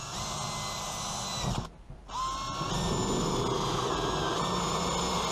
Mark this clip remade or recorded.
recorded